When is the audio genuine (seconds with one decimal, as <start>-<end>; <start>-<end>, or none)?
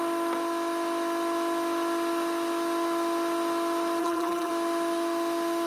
0.0-4.0; 4.5-5.7